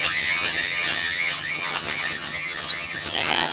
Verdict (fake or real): fake